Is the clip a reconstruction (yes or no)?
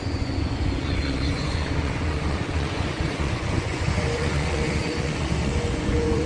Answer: yes